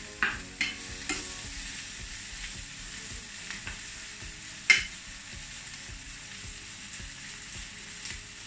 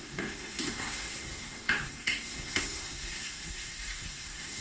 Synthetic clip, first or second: second